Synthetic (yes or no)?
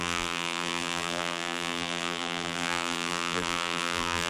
yes